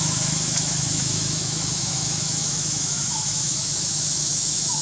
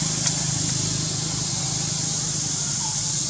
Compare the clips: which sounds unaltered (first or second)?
second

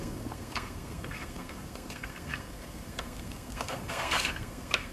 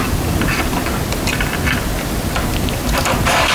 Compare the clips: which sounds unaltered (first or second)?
second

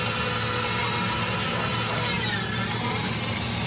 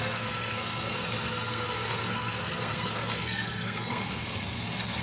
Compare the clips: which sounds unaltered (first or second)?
first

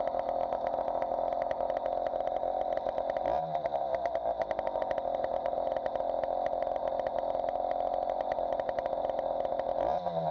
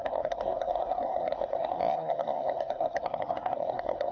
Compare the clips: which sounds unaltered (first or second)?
first